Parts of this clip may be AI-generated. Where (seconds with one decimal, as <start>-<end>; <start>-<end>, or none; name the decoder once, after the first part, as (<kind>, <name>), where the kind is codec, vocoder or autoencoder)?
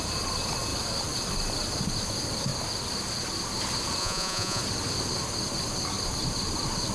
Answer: 4.0-4.6 (vocoder, Vocos)